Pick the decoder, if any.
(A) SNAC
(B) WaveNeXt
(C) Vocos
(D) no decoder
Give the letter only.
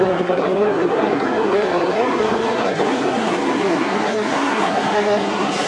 A